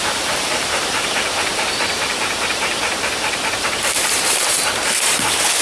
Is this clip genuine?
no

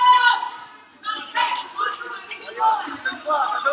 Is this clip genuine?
no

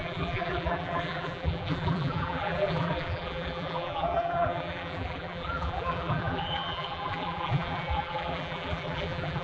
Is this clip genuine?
no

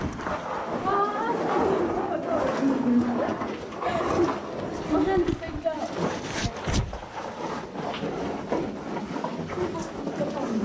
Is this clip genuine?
yes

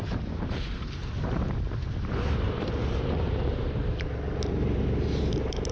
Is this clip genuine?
no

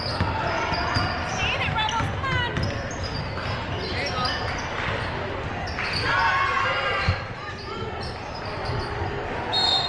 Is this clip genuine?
yes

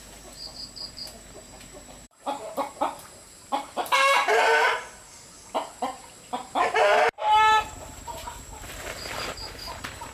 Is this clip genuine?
no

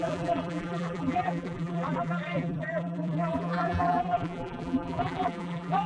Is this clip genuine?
no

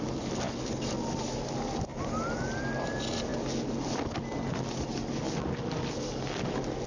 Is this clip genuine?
yes